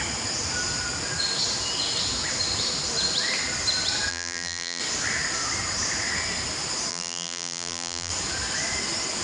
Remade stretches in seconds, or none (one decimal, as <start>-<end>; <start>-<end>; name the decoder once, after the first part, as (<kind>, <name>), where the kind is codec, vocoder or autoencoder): 4.1-4.8 (vocoder, BigVGAN v2); 6.9-8.1

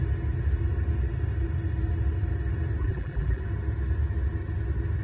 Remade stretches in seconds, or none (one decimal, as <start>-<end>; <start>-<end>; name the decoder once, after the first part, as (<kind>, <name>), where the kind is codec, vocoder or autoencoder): 2.8-3.4 (vocoder, BigVGAN v2)

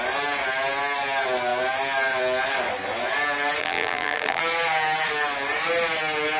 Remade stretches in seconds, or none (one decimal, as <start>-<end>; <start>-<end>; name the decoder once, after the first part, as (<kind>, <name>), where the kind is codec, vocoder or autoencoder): 3.6-4.4 (vocoder, BigVGAN v2)

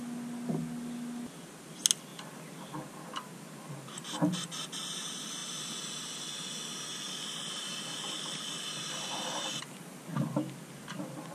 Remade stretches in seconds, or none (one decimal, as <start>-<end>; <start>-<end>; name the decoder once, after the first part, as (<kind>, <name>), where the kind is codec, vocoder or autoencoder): none

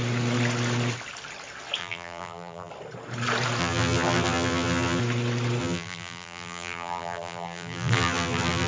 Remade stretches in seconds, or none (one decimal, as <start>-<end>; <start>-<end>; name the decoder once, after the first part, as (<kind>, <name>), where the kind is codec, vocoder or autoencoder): 1.8-2.7 (vocoder, BigVGAN v2); 3.6-5.0; 5.6-8.7

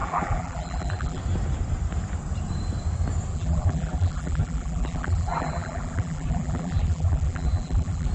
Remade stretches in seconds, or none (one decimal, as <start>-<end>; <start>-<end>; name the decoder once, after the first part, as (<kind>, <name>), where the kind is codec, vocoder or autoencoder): 0.0-1.2 (vocoder, BigVGAN v2); 3.3-8.1

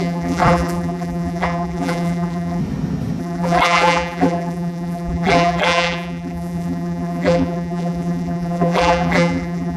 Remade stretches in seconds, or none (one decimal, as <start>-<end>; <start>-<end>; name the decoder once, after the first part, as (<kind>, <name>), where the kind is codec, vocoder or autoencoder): 0.0-2.6 (vocoder, BigVGAN v2); 3.2-9.8

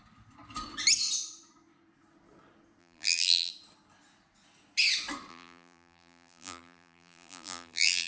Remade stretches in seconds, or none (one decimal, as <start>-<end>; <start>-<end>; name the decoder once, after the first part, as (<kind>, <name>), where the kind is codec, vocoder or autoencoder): 2.8-3.5 (vocoder, BigVGAN v2); 5.3-8.1